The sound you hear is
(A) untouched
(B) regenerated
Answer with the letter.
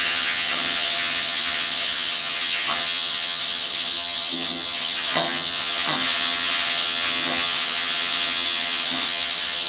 B